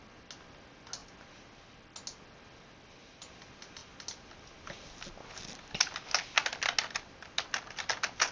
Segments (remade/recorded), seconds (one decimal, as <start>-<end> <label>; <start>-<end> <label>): 0.0-8.3 recorded

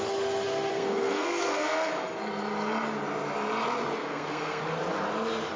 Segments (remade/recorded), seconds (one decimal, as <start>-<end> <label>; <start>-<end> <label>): 0.0-0.7 recorded; 0.7-1.9 remade; 1.9-4.0 recorded; 4.0-4.6 remade; 4.6-5.6 recorded

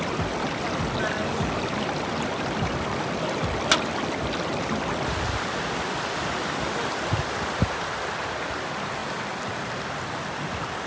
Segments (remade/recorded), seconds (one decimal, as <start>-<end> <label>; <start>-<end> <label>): 0.0-10.9 recorded

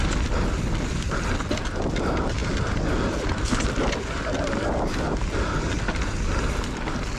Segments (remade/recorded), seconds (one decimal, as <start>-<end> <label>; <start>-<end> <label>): 0.0-7.2 recorded

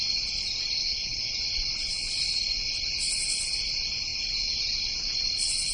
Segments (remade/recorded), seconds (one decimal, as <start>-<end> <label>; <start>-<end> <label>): 0.0-0.8 recorded; 0.8-1.3 remade; 1.3-5.7 recorded

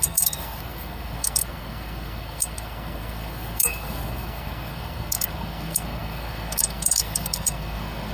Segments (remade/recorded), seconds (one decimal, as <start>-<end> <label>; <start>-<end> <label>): 0.0-8.1 remade

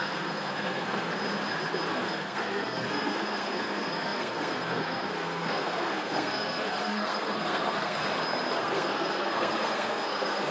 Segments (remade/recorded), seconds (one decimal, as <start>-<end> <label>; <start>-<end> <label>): 0.0-1.1 remade; 1.1-1.9 recorded; 1.9-8.0 remade; 8.0-8.6 recorded; 8.6-10.5 remade

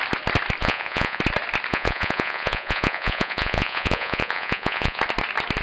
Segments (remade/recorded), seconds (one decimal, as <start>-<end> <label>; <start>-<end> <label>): 0.0-0.6 recorded; 0.6-1.2 remade; 1.2-1.7 recorded; 1.7-5.0 remade; 5.0-5.6 recorded